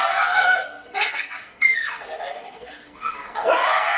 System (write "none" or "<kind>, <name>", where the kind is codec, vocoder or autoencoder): codec, SNAC